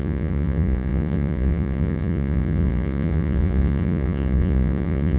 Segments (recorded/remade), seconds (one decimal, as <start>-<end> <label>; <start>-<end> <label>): 0.0-5.2 remade